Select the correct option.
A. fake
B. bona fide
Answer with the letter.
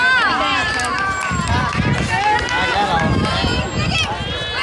B